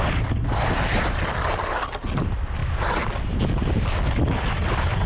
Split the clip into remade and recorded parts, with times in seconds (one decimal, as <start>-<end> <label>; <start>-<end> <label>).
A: 0.0-5.1 recorded